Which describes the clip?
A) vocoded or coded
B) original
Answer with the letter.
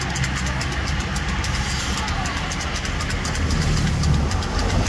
B